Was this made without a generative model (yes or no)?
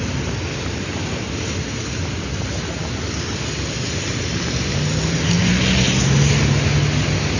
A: yes